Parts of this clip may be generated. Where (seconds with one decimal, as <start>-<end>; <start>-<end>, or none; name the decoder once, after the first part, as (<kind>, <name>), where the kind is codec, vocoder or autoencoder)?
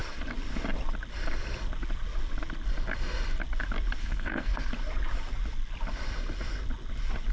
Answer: 4.0-4.7 (codec, SNAC)